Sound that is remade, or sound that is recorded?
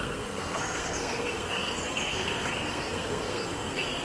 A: remade